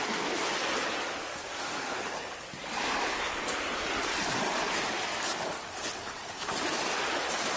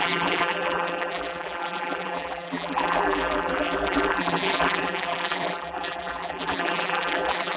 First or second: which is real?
first